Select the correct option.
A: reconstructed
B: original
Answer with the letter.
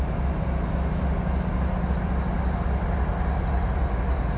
B